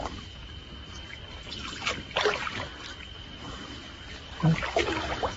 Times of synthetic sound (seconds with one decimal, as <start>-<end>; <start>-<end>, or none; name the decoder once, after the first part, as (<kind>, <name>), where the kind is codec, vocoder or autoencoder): none

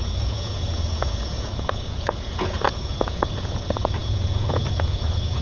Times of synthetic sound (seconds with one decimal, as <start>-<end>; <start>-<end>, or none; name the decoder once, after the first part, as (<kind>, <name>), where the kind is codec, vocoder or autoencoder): 0.0-5.4 (vocoder, Vocos)

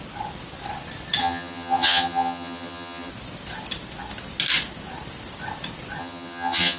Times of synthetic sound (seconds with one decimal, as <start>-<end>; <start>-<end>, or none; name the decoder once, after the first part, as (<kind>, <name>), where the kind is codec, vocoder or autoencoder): 1.2-3.1 (vocoder, HiFi-GAN); 6.0-6.8

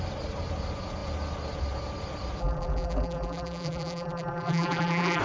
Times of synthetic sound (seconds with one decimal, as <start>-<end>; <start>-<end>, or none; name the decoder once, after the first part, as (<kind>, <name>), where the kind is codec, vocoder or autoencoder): 2.4-5.2 (vocoder, BigVGAN v2)

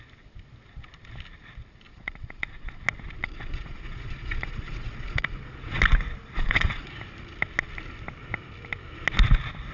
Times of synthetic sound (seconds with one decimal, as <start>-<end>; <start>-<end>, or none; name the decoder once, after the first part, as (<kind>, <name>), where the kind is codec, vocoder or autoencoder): 1.9-2.8 (vocoder, Vocos); 3.2-5.8; 6.2-6.9

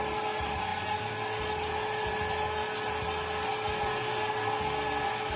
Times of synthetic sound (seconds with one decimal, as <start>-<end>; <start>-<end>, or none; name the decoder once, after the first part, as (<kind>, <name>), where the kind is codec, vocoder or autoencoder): none

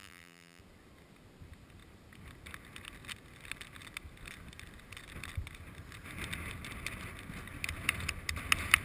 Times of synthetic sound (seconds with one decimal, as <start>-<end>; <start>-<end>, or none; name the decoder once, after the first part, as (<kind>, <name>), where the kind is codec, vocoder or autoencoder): 0.0-0.6 (vocoder, BigVGAN v2)

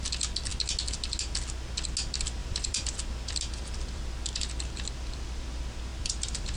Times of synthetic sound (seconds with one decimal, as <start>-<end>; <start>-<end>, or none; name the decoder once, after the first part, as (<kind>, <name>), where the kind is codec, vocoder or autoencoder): 2.4-4.1 (vocoder, BigVGAN v2); 5.9-6.6